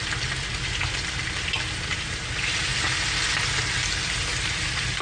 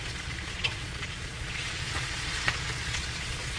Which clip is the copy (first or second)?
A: second